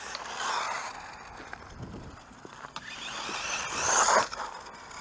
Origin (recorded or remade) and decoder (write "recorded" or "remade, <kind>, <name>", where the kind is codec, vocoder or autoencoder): recorded